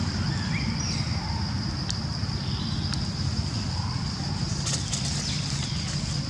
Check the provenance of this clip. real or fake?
fake